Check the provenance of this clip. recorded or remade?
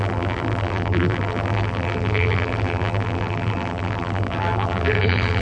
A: remade